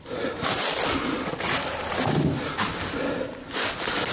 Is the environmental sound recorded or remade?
recorded